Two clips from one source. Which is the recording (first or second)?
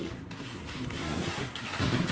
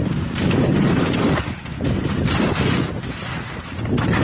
second